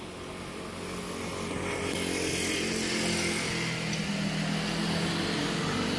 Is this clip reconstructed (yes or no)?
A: no